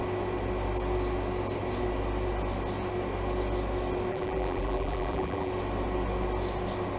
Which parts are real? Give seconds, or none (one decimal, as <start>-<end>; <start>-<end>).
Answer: 0.0-4.1; 5.5-7.0